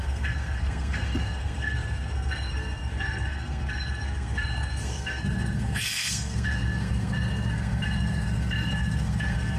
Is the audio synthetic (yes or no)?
yes